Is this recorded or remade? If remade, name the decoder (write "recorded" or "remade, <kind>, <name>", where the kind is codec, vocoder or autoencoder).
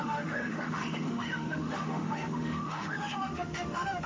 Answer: remade, autoencoder, DAC-VAE